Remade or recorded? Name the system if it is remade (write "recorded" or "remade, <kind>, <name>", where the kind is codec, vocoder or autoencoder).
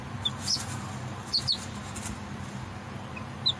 recorded